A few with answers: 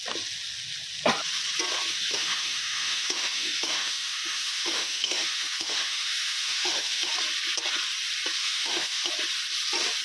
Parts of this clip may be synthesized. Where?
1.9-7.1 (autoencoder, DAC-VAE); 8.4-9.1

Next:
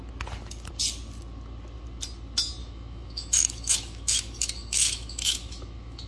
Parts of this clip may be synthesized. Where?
2.6-6.1 (autoencoder, DAC-VAE)